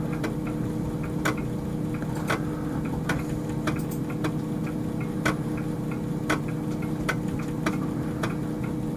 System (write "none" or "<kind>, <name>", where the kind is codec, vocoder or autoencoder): none